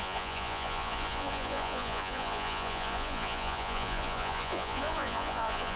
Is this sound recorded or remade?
remade